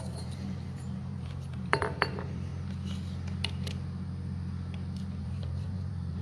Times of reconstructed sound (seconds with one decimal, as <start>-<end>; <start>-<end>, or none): 0.0-2.5; 5.2-6.2